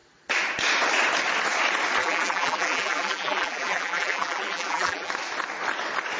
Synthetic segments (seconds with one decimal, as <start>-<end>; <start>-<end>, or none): 2.0-5.1